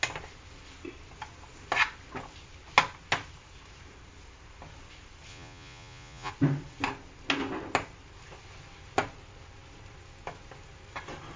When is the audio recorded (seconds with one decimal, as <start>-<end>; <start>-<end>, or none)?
0.0-5.3; 6.3-11.4